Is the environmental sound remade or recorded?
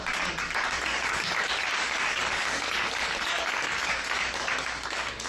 remade